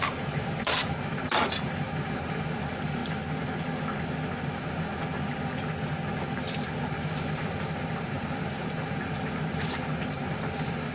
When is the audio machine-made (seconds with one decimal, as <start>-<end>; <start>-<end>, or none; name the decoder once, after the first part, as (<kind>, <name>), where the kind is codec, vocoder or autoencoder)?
0.0-3.0 (vocoder, BigVGAN v2); 6.8-10.9